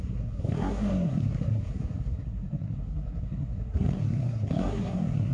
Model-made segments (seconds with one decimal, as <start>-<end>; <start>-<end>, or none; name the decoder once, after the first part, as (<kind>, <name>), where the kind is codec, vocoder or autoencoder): 0.0-5.3 (codec, SNAC)